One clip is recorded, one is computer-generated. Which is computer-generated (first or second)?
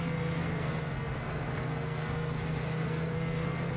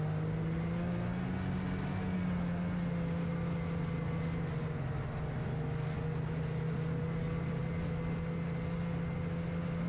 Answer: first